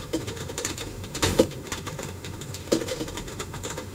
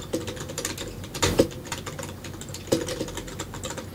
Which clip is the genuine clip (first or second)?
second